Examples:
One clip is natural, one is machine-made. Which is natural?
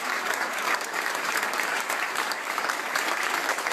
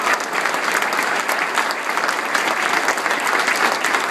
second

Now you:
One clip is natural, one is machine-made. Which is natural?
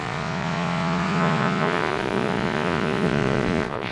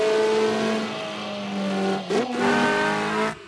second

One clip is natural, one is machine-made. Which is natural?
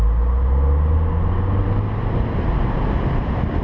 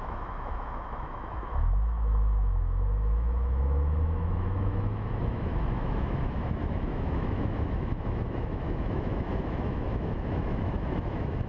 first